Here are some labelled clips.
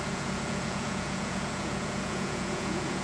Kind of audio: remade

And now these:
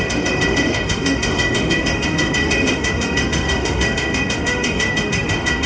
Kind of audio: remade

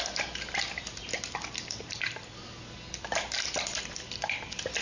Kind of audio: recorded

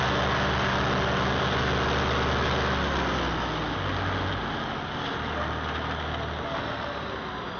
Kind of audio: recorded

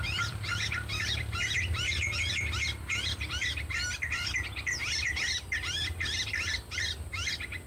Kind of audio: remade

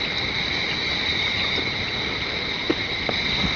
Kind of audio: recorded